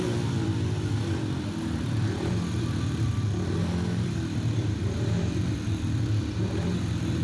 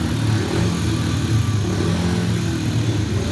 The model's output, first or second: first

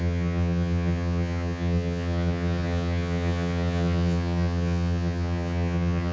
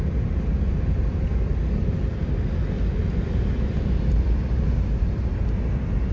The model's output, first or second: first